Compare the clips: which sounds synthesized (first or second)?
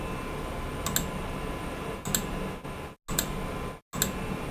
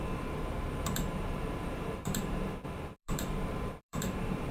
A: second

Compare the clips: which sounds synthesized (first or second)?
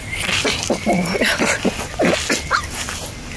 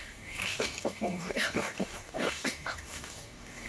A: second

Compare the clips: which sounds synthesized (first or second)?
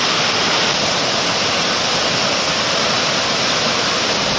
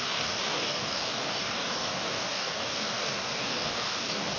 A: second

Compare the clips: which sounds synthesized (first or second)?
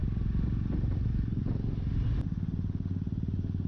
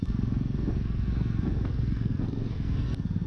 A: second